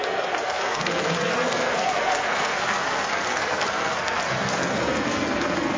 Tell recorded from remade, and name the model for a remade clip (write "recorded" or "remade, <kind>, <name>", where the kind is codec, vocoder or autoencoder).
remade, codec, SNAC